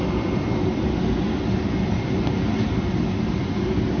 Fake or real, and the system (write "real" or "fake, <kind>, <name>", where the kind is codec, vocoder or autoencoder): real